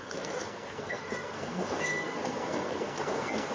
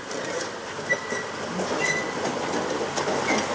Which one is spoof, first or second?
first